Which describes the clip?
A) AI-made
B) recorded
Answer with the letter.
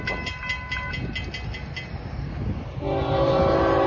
B